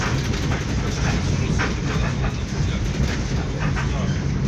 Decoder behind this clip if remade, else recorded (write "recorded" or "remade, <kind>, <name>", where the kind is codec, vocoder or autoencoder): recorded